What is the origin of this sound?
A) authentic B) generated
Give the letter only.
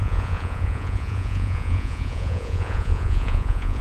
B